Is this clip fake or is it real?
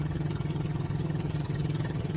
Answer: fake